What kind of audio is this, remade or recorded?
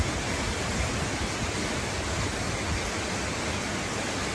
recorded